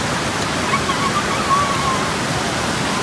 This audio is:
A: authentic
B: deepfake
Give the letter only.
A